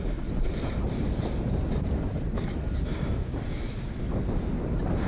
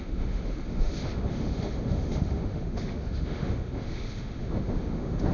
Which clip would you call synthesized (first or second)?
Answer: second